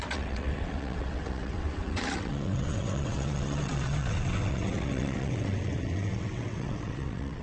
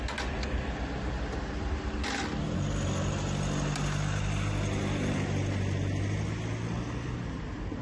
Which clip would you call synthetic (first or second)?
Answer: first